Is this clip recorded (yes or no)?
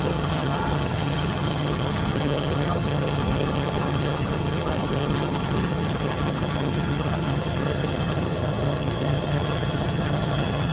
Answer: no